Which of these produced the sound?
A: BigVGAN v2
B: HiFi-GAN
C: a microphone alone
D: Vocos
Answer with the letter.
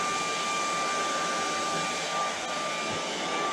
C